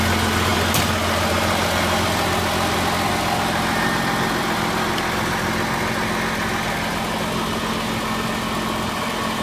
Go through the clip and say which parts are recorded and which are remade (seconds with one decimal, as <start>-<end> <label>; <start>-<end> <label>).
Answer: 0.0-9.4 recorded